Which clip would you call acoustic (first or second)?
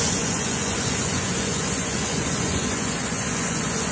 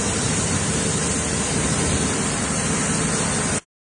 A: second